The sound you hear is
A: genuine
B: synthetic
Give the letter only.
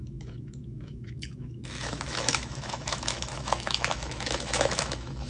B